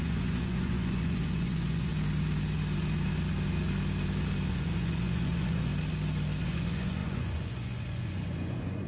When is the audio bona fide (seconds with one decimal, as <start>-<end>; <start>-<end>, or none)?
1.9-4.5; 5.7-6.4